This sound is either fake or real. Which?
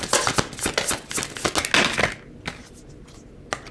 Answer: real